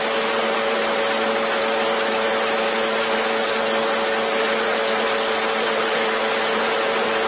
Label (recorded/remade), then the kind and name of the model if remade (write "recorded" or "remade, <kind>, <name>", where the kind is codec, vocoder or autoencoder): recorded